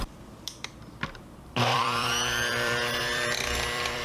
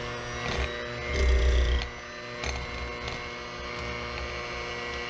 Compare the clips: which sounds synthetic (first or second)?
first